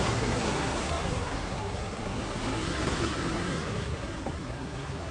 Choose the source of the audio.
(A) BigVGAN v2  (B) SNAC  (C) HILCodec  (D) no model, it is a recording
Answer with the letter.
B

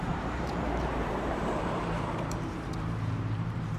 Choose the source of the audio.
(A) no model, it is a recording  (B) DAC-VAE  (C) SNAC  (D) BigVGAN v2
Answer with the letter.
D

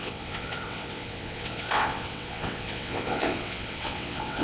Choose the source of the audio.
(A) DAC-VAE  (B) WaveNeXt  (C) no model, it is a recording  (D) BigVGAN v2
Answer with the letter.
B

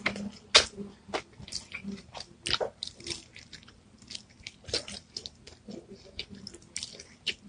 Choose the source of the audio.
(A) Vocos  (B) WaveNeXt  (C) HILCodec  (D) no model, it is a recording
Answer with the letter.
D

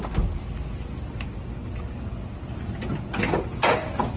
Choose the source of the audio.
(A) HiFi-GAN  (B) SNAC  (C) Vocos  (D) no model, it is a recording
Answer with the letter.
D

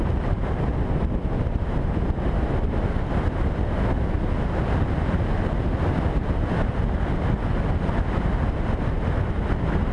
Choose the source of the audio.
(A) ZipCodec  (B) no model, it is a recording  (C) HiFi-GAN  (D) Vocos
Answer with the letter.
B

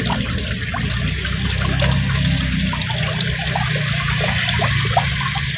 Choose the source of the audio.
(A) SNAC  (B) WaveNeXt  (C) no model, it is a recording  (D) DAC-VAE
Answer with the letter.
C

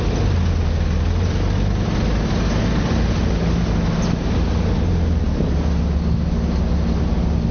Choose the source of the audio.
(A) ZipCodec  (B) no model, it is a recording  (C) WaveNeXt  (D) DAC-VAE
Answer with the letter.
B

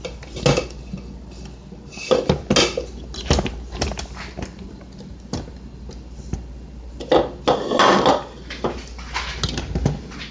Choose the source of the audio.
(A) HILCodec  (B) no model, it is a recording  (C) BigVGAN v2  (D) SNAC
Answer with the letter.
B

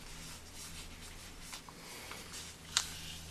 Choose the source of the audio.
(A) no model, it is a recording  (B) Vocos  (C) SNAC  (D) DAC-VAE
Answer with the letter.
A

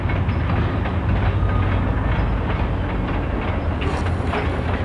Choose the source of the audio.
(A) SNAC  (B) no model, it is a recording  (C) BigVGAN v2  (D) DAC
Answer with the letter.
B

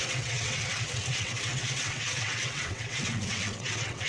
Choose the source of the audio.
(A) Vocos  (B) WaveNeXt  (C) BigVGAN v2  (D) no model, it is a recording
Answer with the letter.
B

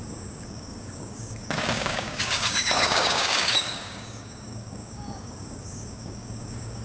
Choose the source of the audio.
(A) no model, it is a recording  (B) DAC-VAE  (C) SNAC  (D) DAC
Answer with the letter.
D